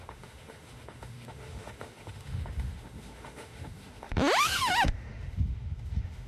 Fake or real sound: fake